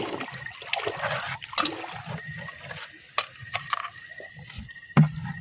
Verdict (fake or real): real